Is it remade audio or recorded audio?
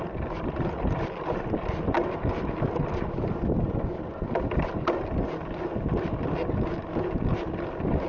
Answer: recorded